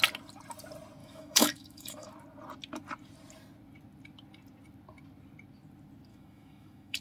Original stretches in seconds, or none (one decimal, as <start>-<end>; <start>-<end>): 0.0-1.0; 2.1-6.1